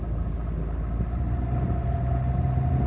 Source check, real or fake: real